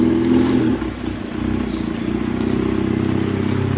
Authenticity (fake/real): real